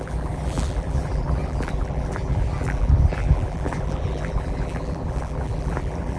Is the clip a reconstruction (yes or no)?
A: yes